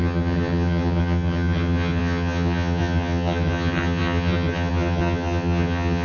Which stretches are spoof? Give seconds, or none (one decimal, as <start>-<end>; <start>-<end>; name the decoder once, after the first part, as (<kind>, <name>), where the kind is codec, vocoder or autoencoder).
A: 0.0-6.0 (vocoder, HiFi-GAN)